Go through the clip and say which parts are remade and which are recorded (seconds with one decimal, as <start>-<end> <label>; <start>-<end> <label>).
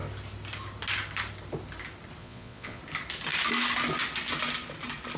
0.0-2.2 recorded; 2.2-2.8 remade; 2.8-5.2 recorded